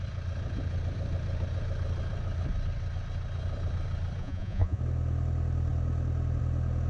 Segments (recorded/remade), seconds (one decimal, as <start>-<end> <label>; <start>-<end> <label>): 0.0-4.2 recorded; 4.2-4.8 remade; 4.8-6.9 recorded